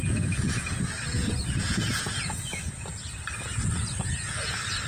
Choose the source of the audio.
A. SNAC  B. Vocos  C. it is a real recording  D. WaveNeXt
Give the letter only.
B